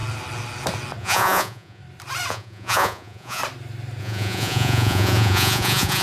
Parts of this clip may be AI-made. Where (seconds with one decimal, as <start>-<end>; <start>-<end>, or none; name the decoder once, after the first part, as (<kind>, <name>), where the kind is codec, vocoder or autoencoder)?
1.0-1.8 (vocoder, Vocos); 2.3-3.4; 4.0-6.0